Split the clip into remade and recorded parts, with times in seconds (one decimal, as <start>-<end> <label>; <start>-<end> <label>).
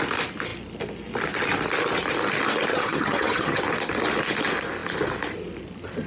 0.0-2.7 recorded; 2.7-3.6 remade; 3.6-6.1 recorded